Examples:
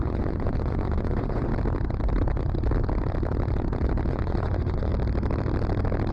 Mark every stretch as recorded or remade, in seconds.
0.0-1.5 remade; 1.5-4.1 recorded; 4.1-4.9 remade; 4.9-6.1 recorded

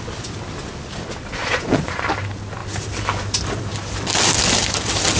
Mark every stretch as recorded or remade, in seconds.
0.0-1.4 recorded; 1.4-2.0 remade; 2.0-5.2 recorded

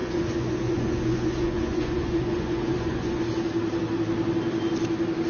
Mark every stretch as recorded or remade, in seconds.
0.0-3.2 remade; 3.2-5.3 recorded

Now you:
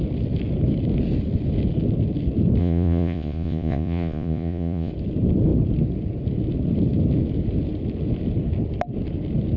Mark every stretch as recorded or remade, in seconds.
0.0-2.6 recorded; 2.6-4.9 remade; 4.9-9.6 recorded